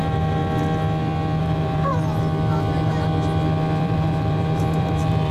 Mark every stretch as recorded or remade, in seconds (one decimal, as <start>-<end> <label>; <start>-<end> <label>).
0.0-0.4 remade; 0.4-1.4 recorded; 1.4-1.9 remade; 1.9-3.8 recorded; 3.8-5.3 remade